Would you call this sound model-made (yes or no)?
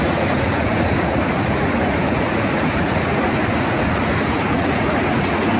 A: yes